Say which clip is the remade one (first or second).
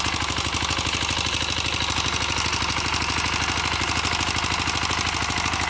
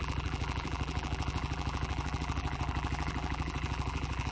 second